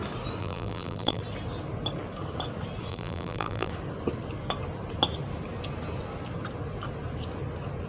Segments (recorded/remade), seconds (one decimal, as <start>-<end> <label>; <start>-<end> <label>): 0.0-0.4 recorded; 0.4-1.2 remade; 1.2-2.9 recorded; 2.9-3.7 remade; 3.7-7.9 recorded